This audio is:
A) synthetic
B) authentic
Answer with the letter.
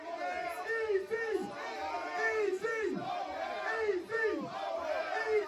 B